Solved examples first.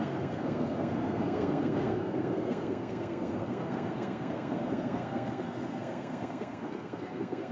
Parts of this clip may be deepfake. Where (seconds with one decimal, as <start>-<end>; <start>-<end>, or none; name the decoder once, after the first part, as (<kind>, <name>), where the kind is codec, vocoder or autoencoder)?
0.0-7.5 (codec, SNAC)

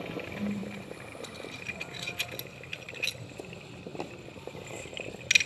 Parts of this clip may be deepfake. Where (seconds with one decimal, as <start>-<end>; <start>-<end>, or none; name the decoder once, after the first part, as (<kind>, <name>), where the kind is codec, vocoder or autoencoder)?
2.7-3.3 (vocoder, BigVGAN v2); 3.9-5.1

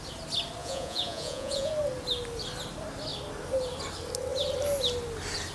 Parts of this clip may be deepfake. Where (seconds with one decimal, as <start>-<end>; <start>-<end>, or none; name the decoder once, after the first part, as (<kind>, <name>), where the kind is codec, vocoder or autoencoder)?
0.6-1.7 (vocoder, Vocos)

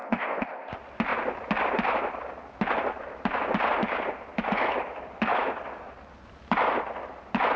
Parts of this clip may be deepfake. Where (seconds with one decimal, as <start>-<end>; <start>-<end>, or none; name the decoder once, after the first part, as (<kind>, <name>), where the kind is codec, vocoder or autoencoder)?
0.0-0.7 (codec, ZipCodec)

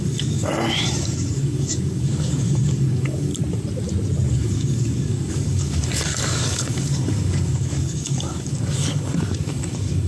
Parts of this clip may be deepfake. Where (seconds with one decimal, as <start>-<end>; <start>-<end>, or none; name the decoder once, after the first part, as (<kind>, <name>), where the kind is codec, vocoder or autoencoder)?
0.0-0.5 (codec, DAC); 1.0-3.3; 4.3-10.1